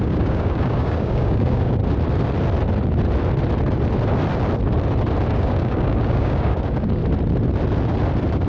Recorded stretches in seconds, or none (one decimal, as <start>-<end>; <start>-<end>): 1.8-5.3; 7.0-8.5